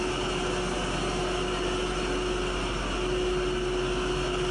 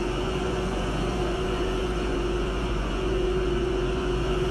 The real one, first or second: first